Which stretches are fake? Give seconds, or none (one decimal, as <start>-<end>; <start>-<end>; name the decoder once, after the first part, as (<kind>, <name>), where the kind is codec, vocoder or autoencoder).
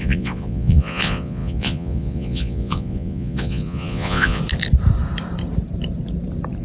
0.0-4.4 (vocoder, Vocos)